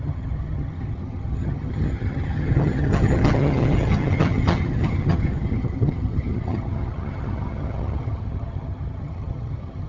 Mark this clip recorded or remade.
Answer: remade